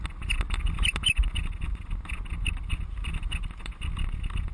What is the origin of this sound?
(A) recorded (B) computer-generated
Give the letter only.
A